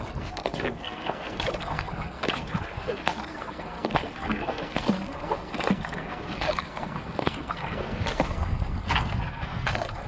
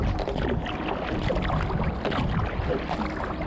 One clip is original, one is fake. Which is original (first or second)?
second